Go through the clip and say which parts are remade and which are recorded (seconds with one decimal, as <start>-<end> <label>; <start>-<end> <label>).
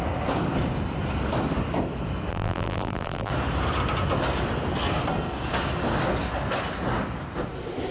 0.0-2.3 recorded; 2.3-3.3 remade; 3.3-7.9 recorded